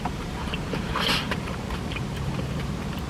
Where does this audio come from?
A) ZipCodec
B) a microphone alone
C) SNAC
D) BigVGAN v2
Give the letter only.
D